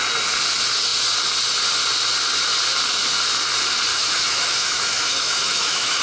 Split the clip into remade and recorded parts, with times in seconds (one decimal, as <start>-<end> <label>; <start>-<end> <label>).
0.0-3.9 recorded; 3.9-6.0 remade